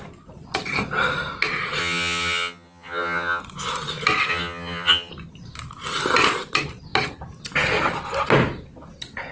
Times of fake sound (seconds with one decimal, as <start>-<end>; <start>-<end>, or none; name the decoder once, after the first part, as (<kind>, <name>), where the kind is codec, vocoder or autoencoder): 1.8-3.4 (vocoder, HiFi-GAN); 4.3-5.1